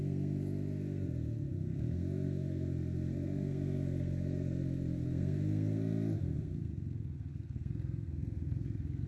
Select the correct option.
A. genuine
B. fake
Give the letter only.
B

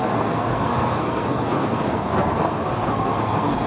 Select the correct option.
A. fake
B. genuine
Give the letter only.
A